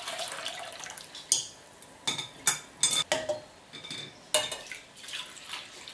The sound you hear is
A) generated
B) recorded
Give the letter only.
B